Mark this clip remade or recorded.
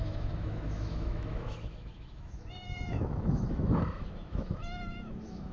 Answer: remade